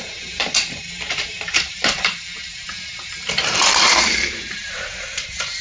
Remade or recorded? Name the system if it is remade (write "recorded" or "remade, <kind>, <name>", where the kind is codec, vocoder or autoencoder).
remade, vocoder, BigVGAN v2